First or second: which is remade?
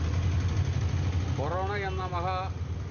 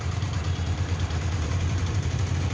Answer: second